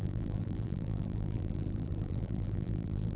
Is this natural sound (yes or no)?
no